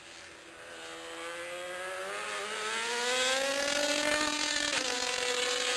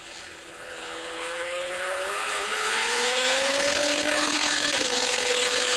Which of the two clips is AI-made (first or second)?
second